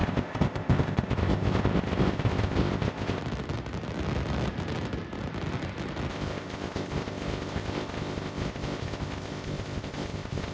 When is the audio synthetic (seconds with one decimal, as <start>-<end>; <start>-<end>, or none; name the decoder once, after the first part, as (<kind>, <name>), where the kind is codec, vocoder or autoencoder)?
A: 0.0-3.2 (codec, ZipCodec); 6.1-10.5